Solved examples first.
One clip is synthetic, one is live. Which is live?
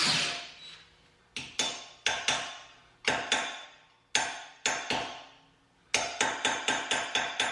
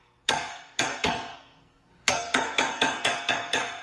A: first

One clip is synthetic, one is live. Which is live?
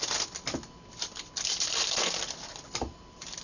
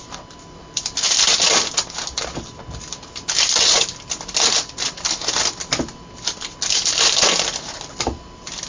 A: second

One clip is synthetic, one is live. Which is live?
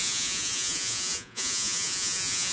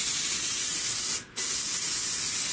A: second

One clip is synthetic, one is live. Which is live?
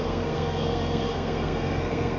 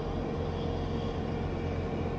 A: second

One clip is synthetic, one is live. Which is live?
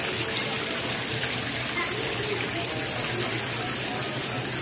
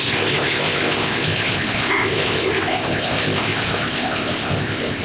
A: first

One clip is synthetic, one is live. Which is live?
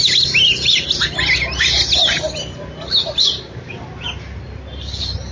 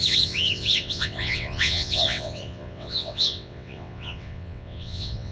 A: first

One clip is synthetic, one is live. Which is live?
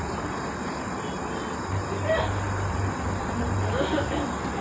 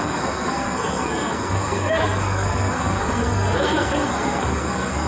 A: first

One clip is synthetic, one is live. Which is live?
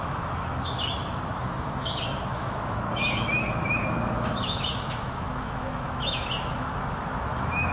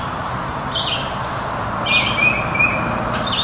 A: second